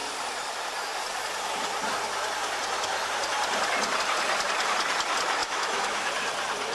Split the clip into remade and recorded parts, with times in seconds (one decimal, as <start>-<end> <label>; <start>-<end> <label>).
0.0-5.4 recorded; 5.4-6.1 remade; 6.1-6.7 recorded